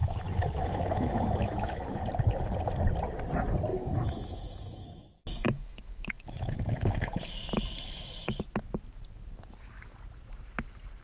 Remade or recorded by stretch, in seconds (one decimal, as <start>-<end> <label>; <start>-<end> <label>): 0.0-2.0 remade; 2.0-3.7 recorded; 3.7-7.2 remade; 7.2-11.0 recorded